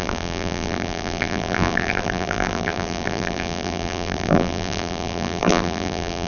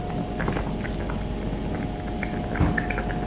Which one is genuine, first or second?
second